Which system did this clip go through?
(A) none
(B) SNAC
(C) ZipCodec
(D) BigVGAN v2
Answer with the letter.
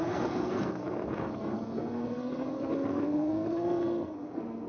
B